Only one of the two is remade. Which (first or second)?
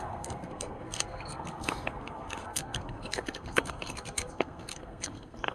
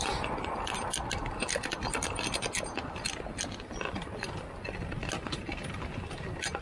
first